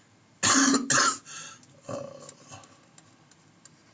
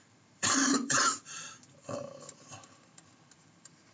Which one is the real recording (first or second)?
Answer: first